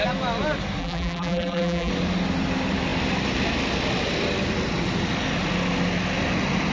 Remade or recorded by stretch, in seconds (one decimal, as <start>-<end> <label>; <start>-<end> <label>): 0.0-0.8 recorded; 0.8-1.9 remade; 1.9-6.7 recorded